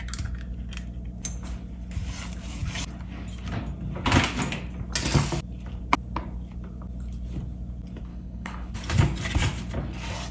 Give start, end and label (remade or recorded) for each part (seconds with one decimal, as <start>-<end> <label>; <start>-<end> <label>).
0.0-8.1 recorded; 8.1-8.7 remade; 8.7-10.3 recorded